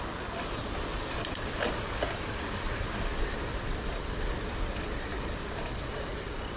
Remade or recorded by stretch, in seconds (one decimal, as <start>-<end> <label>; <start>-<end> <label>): 0.0-3.1 recorded; 3.1-6.6 remade